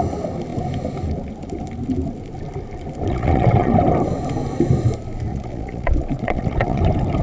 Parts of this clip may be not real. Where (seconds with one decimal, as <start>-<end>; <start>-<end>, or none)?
3.1-3.7; 5.3-6.8